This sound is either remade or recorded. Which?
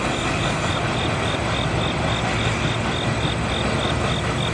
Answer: recorded